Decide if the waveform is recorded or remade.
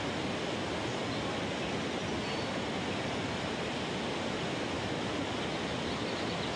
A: recorded